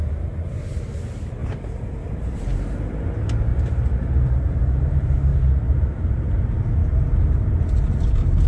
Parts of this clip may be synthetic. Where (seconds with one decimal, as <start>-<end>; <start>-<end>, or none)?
0.0-6.8; 7.8-8.5